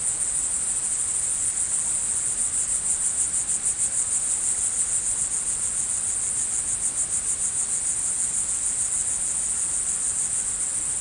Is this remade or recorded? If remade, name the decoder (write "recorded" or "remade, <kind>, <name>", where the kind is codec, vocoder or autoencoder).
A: recorded